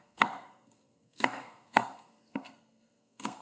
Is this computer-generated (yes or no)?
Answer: yes